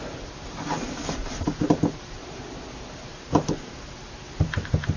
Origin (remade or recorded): remade